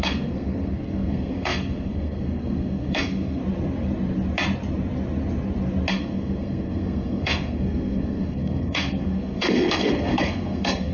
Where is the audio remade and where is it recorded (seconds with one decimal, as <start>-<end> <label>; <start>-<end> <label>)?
0.0-3.4 remade; 3.4-5.9 recorded; 5.9-10.9 remade